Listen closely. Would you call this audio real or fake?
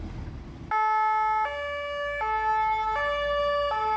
real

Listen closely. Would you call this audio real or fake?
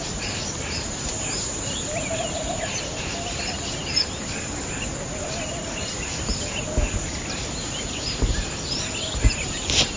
real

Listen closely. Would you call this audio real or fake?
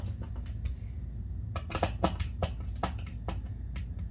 real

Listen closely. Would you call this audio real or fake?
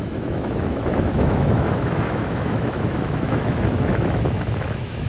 fake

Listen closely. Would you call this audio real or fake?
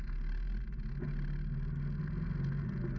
real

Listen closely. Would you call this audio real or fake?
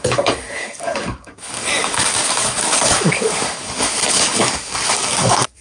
fake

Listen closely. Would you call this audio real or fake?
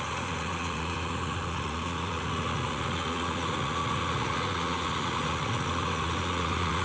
fake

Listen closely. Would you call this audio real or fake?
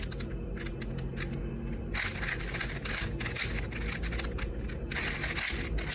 real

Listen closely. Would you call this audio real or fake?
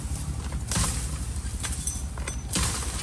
real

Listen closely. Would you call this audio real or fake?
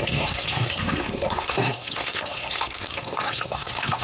fake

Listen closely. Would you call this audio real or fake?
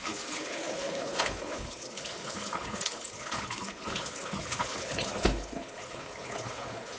fake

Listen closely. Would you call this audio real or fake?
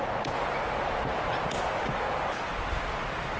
real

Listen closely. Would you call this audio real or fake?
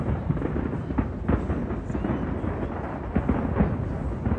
real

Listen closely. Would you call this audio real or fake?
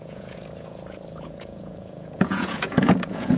fake